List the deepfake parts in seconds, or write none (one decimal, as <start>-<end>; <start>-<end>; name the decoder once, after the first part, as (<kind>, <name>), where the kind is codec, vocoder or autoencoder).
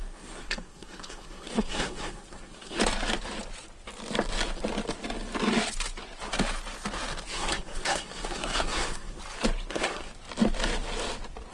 0.0-2.8 (codec, SNAC); 7.3-9.2; 9.7-10.1